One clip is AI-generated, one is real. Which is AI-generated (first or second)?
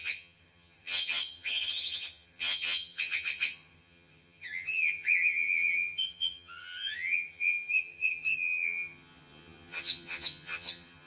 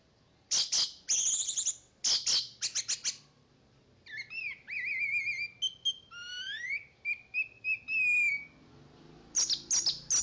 first